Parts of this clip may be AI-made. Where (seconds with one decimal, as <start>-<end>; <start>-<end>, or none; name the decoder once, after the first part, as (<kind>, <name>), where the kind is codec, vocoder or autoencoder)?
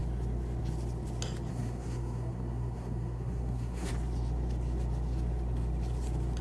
1.5-3.9 (codec, SNAC)